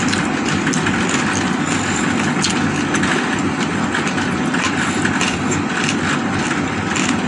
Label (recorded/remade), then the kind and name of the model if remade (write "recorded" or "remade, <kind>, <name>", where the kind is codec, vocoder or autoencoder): recorded